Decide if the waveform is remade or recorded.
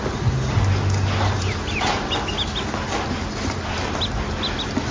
recorded